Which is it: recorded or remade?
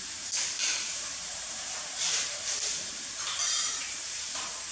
remade